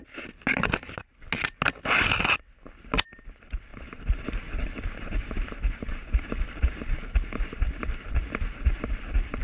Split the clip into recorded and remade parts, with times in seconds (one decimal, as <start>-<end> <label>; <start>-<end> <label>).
0.0-3.7 recorded; 3.7-7.6 remade; 7.6-9.4 recorded